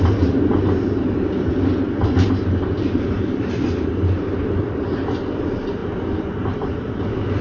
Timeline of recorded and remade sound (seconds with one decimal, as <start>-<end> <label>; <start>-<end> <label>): 0.0-2.0 recorded; 2.0-4.8 remade; 4.8-7.4 recorded

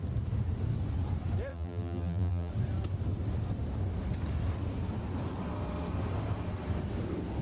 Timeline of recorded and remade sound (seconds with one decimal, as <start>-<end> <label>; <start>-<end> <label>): 0.0-1.5 recorded; 1.5-2.5 remade; 2.5-7.4 recorded

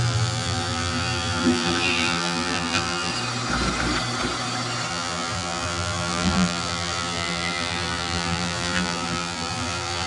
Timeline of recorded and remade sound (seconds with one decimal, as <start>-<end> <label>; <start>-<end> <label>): 0.0-3.1 remade; 3.1-4.9 recorded; 4.9-10.1 remade

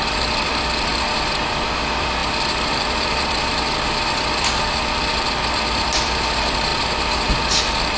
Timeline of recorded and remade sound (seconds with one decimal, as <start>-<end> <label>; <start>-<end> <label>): 0.0-0.9 remade; 0.9-1.4 recorded; 1.4-6.7 remade; 6.7-7.6 recorded; 7.6-8.0 remade